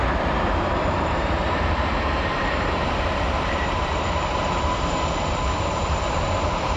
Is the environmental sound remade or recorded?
remade